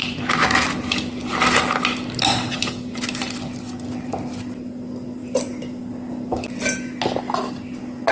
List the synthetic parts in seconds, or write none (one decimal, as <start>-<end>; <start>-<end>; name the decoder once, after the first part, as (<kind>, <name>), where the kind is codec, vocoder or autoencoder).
none